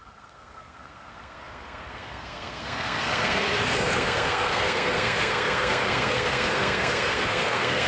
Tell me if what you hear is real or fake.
fake